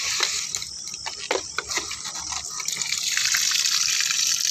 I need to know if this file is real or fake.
real